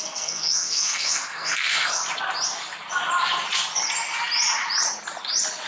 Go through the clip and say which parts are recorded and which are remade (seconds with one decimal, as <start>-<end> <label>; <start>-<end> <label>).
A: 0.0-2.0 remade; 2.0-5.7 recorded